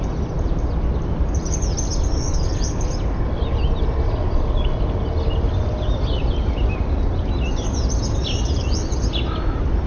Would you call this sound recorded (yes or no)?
yes